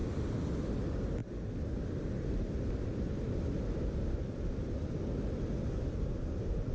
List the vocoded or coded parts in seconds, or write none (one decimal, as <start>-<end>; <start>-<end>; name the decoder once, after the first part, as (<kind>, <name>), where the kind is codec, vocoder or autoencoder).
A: none